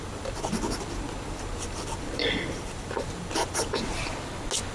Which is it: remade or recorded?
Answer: recorded